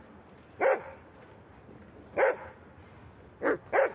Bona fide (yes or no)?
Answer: yes